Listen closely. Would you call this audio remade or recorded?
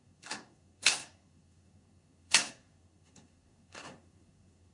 remade